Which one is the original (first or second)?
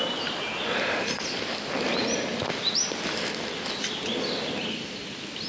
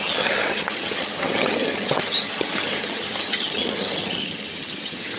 first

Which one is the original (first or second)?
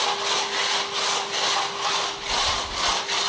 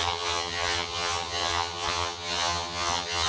first